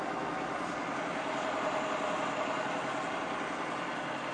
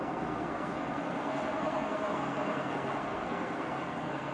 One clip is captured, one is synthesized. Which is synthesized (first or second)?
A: second